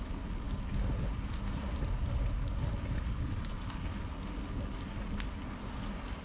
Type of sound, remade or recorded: recorded